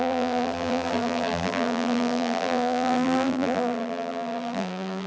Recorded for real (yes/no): no